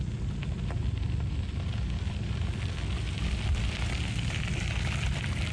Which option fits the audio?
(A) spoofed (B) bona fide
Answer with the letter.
B